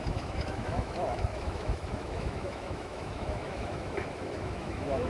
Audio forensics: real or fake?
fake